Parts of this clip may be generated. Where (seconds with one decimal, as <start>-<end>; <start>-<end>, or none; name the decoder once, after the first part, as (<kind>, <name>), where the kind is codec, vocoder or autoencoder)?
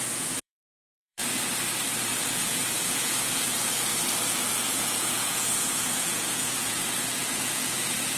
0.0-1.2 (vocoder, Vocos); 2.1-3.9; 4.6-8.2